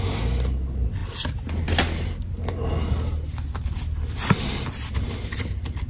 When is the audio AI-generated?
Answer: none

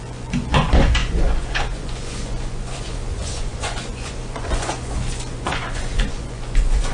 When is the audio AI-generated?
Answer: 0.0-6.9 (vocoder, Vocos)

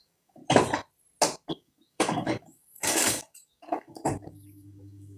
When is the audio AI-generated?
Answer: 0.0-0.4 (codec, DAC); 1.5-5.2

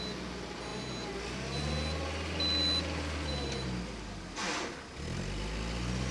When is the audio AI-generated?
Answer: none